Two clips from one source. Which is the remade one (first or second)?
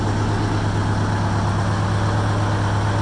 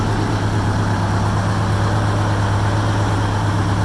second